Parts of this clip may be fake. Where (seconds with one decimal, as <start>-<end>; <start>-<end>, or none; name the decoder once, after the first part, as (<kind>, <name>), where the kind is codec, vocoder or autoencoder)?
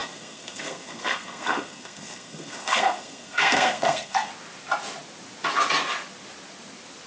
0.0-4.3 (codec, SNAC)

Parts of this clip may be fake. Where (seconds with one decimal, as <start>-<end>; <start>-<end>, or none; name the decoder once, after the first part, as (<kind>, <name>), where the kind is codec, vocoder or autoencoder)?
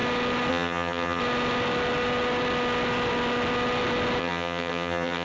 0.5-1.2 (vocoder, HiFi-GAN); 4.2-5.2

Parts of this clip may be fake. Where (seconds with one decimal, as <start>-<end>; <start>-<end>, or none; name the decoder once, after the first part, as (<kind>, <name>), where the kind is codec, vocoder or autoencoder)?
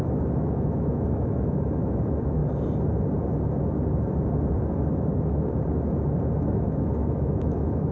0.0-2.4 (autoencoder, DAC-VAE); 6.2-7.9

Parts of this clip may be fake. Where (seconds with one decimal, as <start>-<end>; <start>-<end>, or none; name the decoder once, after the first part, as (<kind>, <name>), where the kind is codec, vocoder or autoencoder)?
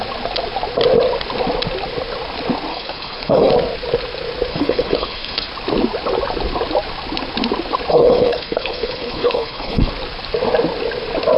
2.7-3.5 (codec, HILCodec); 4.5-5.5; 7.9-9.9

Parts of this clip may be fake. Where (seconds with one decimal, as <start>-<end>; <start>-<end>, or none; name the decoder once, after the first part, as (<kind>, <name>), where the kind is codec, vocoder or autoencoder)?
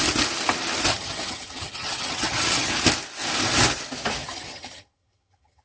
0.9-2.7 (vocoder, HiFi-GAN); 4.2-5.6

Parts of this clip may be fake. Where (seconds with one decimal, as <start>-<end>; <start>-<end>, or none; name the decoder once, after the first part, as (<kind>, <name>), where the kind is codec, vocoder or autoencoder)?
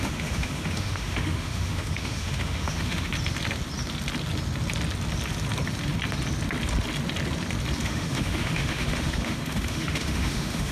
0.0-3.1 (autoencoder, DAC-VAE); 7.8-10.7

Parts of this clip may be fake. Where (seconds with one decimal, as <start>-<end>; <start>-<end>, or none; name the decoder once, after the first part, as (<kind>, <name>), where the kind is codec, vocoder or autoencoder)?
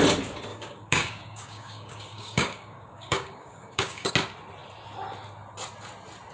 0.5-4.1 (codec, DAC)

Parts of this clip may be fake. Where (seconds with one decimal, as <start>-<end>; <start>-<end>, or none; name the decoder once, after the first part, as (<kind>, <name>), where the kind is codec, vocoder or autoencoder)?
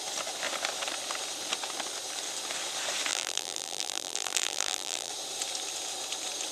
3.1-5.1 (vocoder, BigVGAN v2)